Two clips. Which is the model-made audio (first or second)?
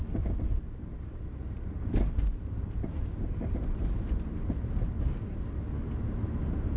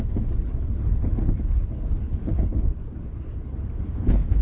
second